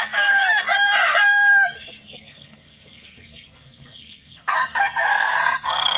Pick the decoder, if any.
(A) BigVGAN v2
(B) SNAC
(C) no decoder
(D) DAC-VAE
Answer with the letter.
B